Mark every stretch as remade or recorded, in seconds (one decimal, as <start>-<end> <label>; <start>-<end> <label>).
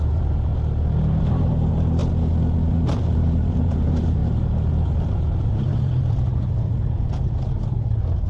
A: 0.0-0.5 remade; 0.5-1.2 recorded; 1.2-2.0 remade; 2.0-2.7 recorded; 2.7-8.3 remade